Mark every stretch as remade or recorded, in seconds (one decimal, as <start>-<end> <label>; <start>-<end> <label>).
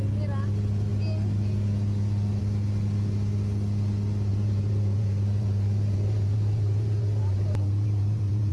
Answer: 0.0-4.3 recorded; 4.3-8.5 remade